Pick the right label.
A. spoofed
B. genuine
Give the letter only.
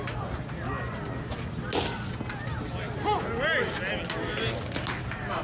B